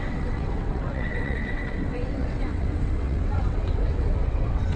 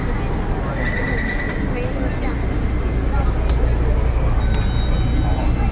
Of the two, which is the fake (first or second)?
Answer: first